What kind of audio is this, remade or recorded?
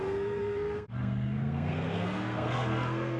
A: remade